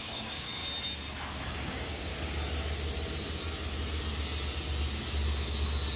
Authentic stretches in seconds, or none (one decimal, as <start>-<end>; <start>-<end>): 0.6-1.4; 2.1-6.0